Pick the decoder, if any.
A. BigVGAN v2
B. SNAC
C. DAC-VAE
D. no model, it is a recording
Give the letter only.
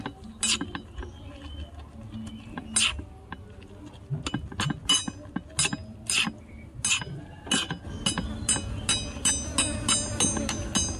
D